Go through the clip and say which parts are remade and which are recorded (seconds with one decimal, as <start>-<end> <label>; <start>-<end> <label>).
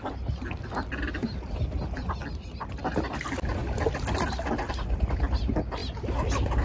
0.0-6.6 recorded